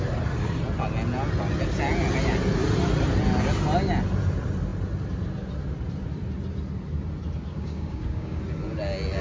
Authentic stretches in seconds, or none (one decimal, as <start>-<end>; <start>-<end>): 0.0-7.5; 8.4-9.2